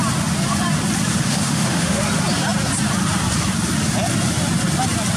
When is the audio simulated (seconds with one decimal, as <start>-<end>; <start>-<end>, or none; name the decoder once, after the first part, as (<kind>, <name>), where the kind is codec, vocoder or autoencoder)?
1.1-2.0 (autoencoder, DAC-VAE)